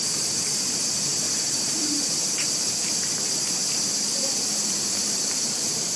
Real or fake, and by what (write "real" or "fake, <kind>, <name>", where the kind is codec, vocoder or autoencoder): fake, vocoder, BigVGAN v2